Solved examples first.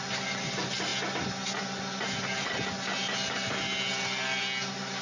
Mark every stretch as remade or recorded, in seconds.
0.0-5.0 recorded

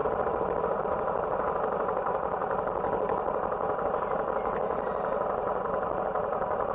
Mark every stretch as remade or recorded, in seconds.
0.0-6.7 recorded

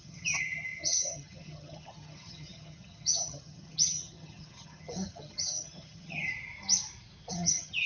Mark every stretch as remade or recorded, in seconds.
0.0-6.3 remade; 6.3-7.3 recorded; 7.3-7.9 remade

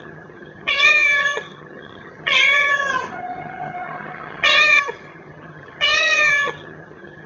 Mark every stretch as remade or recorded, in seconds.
0.0-7.3 remade

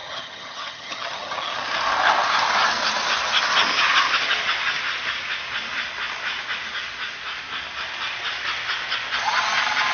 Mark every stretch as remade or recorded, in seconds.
0.0-1.6 remade; 1.6-9.9 recorded

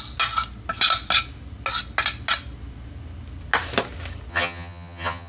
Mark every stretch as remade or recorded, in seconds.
0.0-4.3 recorded; 4.3-5.3 remade

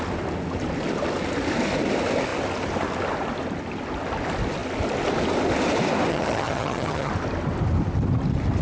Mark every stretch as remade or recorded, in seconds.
0.0-6.1 recorded; 6.1-7.1 remade; 7.1-8.6 recorded

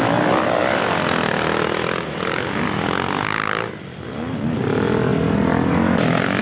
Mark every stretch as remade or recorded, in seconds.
0.0-6.4 recorded